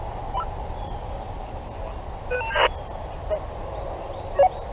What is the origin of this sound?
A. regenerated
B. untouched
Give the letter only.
B